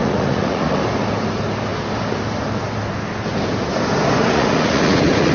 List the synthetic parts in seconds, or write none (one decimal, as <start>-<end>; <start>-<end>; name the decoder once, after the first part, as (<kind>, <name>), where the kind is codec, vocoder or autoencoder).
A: 0.0-0.8 (vocoder, Vocos); 4.2-5.3